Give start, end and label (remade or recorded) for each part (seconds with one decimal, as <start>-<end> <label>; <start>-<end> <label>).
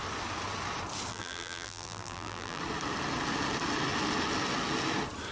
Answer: 0.0-1.1 recorded; 1.1-2.6 remade; 2.6-5.3 recorded